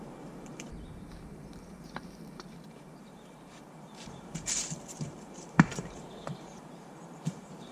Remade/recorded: remade